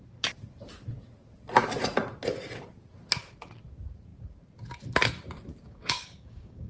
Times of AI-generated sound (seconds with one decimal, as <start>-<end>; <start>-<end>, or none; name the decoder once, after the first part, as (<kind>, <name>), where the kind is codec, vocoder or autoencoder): 5.6-6.7 (codec, DAC)